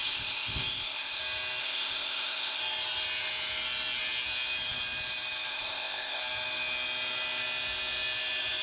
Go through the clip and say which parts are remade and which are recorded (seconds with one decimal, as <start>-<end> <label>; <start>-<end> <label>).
0.0-1.2 remade; 1.2-1.6 recorded; 1.6-2.6 remade; 2.6-5.5 recorded; 5.5-6.2 remade; 6.2-8.6 recorded